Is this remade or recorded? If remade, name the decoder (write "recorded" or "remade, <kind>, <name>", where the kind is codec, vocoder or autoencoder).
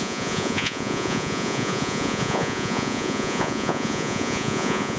remade, vocoder, Vocos